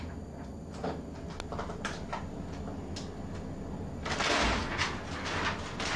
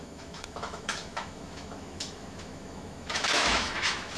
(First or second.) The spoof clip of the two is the second